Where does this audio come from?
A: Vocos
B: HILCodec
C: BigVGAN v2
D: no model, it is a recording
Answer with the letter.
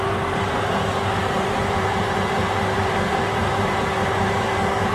C